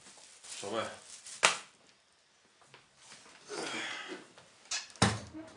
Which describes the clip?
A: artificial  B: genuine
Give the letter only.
B